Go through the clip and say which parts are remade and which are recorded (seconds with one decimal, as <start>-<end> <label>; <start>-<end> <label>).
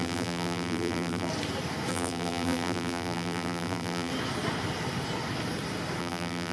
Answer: 0.0-1.3 remade; 1.3-1.9 recorded; 1.9-4.1 remade; 4.1-6.0 recorded; 6.0-6.5 remade